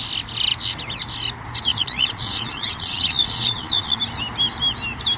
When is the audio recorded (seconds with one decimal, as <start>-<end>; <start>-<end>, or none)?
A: 0.0-1.7; 4.0-5.2